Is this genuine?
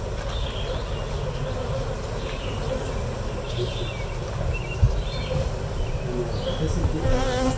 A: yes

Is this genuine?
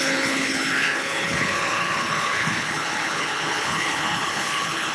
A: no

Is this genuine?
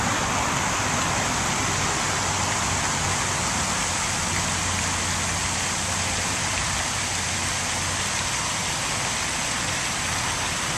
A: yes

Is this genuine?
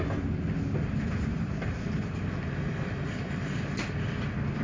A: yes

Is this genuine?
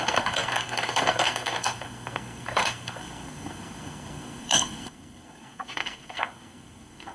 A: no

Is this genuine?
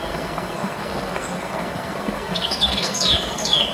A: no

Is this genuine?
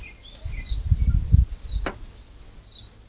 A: yes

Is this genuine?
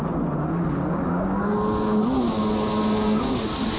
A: yes